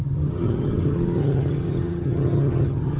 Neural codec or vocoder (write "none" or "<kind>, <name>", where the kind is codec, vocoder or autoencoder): vocoder, HiFi-GAN